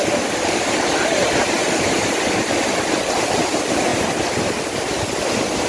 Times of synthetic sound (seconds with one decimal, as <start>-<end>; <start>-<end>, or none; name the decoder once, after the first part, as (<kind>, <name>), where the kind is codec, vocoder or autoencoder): none